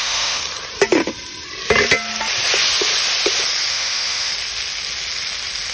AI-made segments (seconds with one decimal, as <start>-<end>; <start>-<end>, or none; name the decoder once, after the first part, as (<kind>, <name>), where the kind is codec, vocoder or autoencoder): 0.0-0.4 (autoencoder, DAC-VAE); 3.7-4.3